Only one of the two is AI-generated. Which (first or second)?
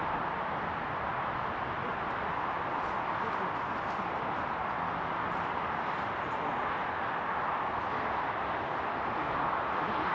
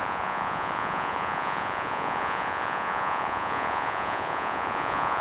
second